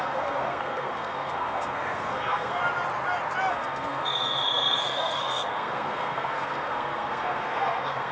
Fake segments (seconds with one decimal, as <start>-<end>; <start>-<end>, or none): 0.0-2.6; 3.5-8.1